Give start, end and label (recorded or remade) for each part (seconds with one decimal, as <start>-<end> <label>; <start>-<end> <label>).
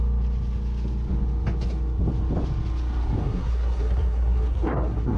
0.0-3.2 recorded; 3.2-5.2 remade